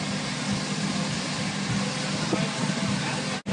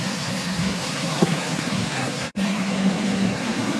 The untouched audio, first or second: first